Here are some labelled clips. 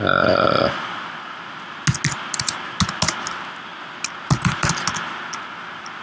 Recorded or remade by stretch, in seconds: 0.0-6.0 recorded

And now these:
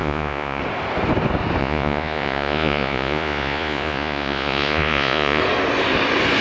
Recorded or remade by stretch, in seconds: 0.0-0.6 remade; 0.6-1.6 recorded; 1.6-5.4 remade; 5.4-6.4 recorded

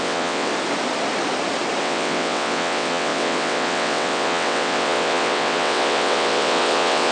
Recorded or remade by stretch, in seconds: 0.0-0.5 remade; 0.5-1.8 recorded; 1.8-7.1 remade

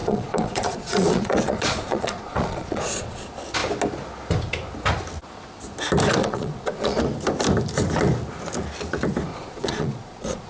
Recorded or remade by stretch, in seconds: 0.0-3.2 remade; 3.2-6.2 recorded; 6.2-7.0 remade; 7.0-9.3 recorded; 9.3-10.5 remade

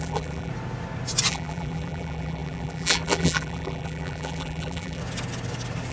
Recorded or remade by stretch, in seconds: 0.0-0.5 remade; 0.5-1.3 recorded; 1.3-5.0 remade; 5.0-5.9 recorded